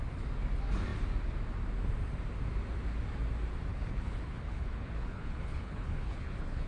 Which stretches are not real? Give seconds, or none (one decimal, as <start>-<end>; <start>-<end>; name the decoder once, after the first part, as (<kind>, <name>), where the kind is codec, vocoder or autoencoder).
3.7-6.7 (codec, HILCodec)